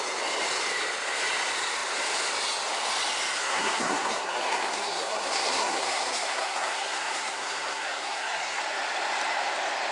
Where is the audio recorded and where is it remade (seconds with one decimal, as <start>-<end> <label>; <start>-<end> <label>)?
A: 0.0-3.4 recorded; 3.4-8.6 remade; 8.6-9.9 recorded